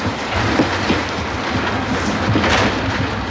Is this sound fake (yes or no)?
no